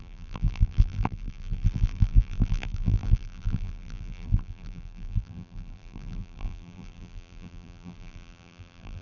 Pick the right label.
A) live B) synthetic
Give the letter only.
B